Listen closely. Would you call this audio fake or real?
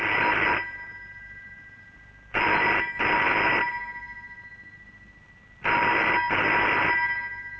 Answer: real